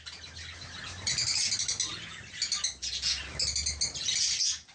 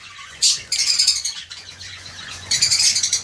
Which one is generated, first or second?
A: second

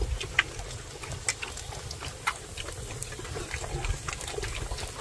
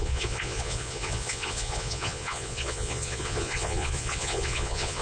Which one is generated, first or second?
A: second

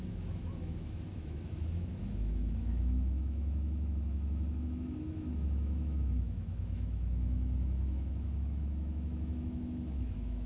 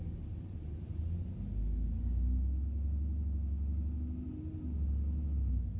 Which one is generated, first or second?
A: first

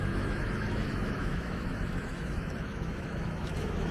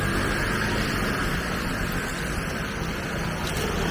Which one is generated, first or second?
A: first